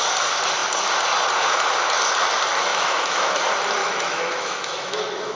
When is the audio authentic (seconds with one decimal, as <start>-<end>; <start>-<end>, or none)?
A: 0.0-2.7; 3.4-3.8; 5.0-5.4